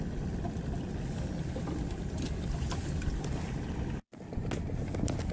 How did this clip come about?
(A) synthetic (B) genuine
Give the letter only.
B